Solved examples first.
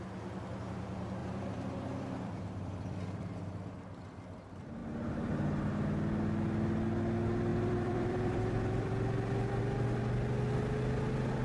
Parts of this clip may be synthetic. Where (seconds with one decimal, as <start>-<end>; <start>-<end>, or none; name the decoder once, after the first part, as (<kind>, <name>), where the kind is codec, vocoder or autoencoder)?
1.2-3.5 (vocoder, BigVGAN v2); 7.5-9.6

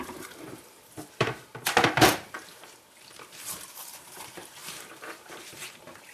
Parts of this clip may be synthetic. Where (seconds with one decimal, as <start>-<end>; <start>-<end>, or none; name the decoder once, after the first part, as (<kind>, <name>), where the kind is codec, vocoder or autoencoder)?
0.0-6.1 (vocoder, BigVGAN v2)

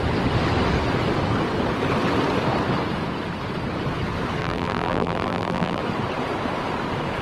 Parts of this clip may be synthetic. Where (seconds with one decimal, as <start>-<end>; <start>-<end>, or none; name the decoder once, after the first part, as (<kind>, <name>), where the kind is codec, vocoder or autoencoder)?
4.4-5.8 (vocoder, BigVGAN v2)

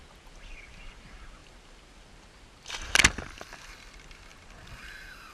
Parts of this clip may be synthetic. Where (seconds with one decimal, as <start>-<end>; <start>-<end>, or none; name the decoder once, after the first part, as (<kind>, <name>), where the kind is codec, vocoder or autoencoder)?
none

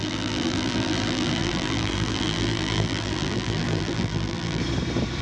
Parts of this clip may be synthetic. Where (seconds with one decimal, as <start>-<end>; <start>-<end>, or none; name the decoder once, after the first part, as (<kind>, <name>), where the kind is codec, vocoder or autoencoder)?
0.0-4.6 (vocoder, BigVGAN v2)

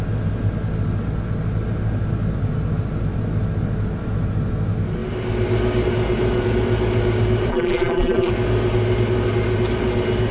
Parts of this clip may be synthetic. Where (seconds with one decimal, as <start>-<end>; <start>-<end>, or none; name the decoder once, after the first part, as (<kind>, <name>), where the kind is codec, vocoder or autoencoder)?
7.5-8.3 (vocoder, BigVGAN v2)